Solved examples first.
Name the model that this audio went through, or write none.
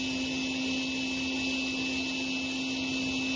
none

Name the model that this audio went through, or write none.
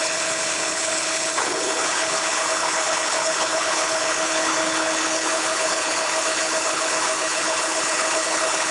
codec, HILCodec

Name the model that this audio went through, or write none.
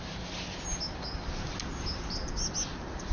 none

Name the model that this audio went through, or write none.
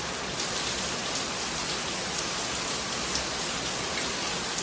none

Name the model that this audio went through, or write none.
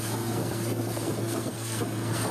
codec, SNAC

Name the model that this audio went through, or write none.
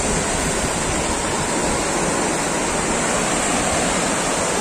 none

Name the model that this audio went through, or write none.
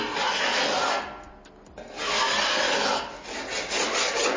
none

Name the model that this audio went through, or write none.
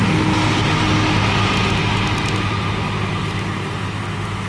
none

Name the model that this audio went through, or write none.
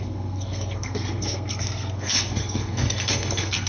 codec, SNAC